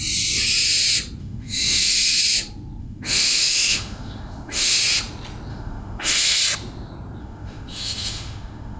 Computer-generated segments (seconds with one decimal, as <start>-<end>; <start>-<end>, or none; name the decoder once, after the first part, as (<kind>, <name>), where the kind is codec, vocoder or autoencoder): 1.2-2.2 (autoencoder, DAC-VAE); 2.8-4.8; 5.5-6.4; 7.2-8.8